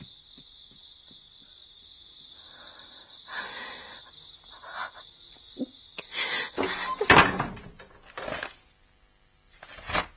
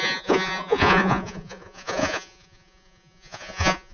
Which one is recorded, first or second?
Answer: first